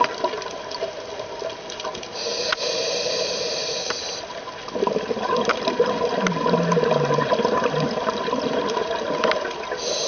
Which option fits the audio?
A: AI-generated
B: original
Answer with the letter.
B